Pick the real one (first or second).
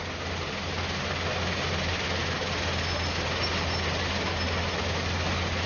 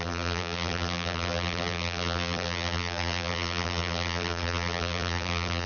first